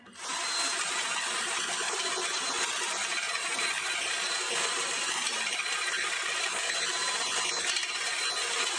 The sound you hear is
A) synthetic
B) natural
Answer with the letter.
B